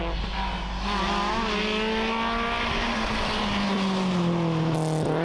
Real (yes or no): yes